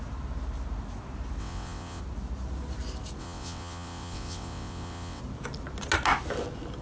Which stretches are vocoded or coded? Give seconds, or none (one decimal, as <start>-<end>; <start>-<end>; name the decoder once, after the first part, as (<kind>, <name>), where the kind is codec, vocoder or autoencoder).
1.4-2.0 (vocoder, WaveNeXt); 3.2-5.2